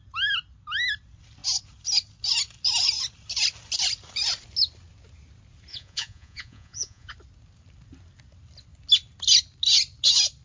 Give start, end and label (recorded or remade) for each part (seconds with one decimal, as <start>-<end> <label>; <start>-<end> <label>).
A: 0.0-5.7 recorded; 5.7-7.1 remade; 7.1-10.4 recorded